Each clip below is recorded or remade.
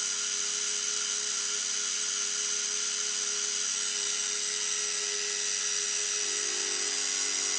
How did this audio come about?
recorded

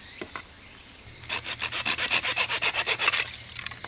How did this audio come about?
recorded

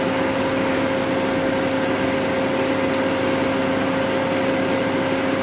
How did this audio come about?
recorded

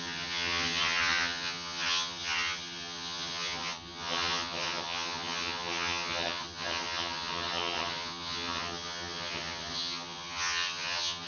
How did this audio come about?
remade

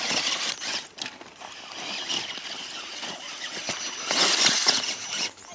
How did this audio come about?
recorded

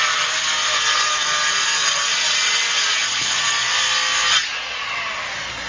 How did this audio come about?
recorded